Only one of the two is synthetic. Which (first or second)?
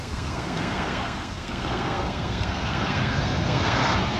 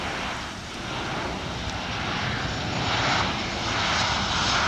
first